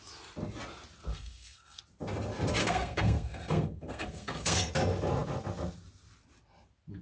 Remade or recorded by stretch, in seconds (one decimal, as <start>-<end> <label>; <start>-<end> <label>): 0.0-1.1 recorded; 1.1-1.8 remade; 1.8-2.6 recorded; 2.6-4.7 remade; 4.7-7.0 recorded